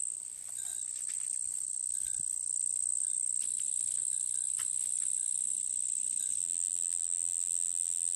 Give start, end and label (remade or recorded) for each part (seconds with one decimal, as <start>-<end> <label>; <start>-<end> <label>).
0.0-6.4 recorded; 6.4-8.2 remade